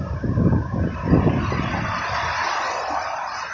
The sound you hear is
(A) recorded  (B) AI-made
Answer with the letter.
A